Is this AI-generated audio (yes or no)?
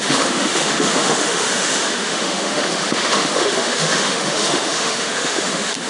yes